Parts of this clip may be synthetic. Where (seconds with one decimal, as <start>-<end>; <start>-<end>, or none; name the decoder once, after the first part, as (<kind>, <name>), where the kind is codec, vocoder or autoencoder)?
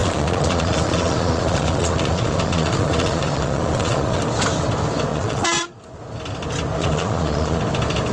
0.0-4.2 (vocoder, Vocos); 5.1-5.8; 6.8-7.6